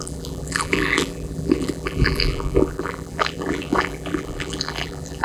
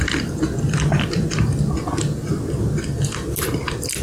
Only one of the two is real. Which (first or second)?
second